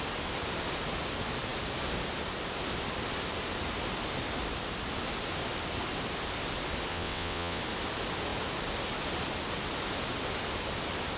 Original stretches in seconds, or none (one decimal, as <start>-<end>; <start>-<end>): 0.0-6.9; 7.6-11.2